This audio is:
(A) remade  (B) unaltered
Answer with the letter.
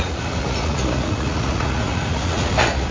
A